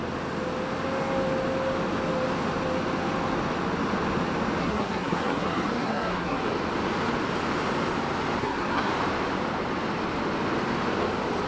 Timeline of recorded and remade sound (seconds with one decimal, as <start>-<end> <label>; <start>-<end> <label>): 0.0-4.6 recorded; 4.6-6.4 remade; 6.4-8.4 recorded; 8.4-8.9 remade; 8.9-11.5 recorded